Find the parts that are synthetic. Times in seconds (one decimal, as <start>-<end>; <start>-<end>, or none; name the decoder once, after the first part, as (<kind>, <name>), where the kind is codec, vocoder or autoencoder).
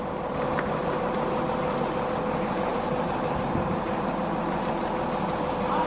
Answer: 2.7-4.3 (vocoder, BigVGAN v2)